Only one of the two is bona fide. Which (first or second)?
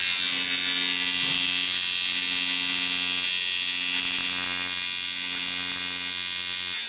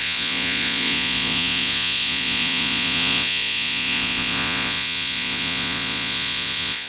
first